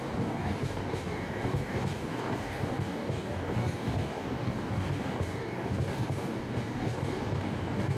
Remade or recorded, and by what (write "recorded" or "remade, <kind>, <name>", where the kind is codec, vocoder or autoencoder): remade, codec, DAC